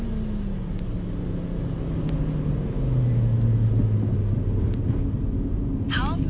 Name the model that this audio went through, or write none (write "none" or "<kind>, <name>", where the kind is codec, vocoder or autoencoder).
none